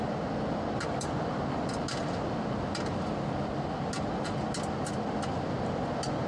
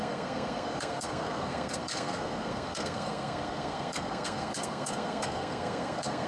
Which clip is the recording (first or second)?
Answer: first